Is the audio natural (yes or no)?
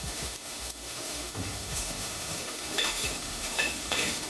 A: no